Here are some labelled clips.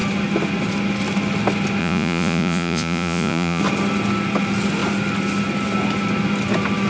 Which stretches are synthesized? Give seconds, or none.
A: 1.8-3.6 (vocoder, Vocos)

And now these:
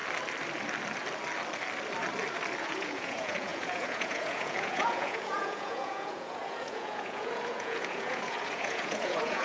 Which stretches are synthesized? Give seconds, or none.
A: 2.6-9.4 (vocoder, Vocos)

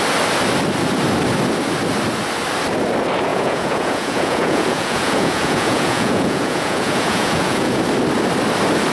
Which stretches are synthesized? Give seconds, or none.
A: 3.3-7.8 (vocoder, Vocos)